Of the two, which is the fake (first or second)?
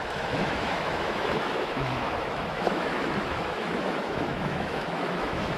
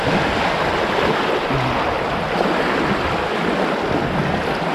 first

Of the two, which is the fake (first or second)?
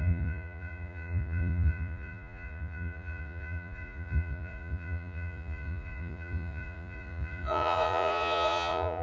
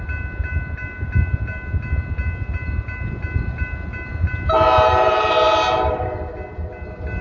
first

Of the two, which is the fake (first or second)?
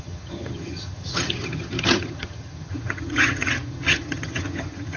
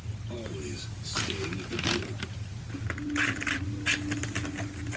first